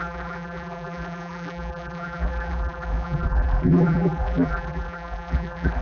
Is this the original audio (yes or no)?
no